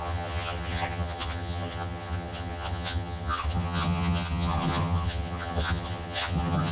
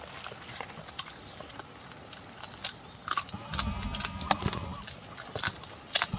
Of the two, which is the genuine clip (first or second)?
second